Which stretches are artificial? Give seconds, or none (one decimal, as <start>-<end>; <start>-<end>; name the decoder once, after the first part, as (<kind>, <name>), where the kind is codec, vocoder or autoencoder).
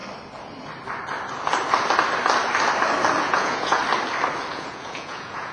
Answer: 3.2-3.8 (vocoder, Vocos); 4.5-5.5